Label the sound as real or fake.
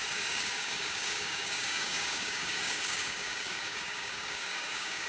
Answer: fake